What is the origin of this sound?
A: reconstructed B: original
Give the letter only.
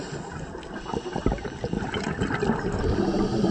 B